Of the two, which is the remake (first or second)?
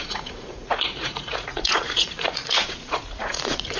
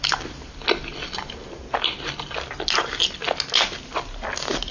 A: first